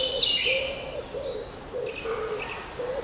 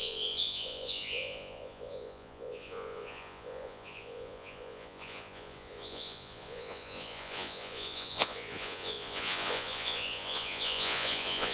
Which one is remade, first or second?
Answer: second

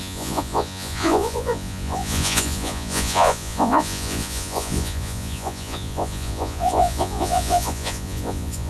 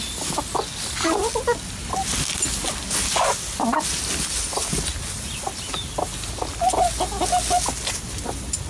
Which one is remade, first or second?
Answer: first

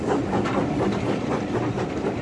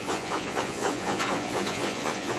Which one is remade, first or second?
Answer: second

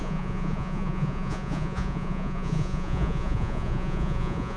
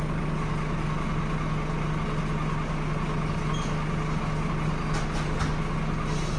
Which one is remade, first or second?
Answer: first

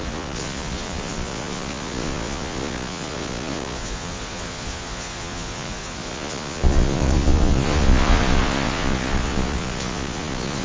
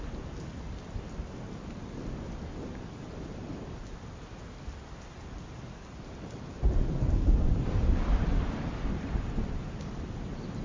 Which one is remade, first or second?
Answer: first